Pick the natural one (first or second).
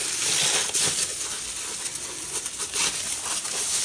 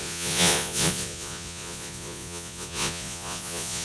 first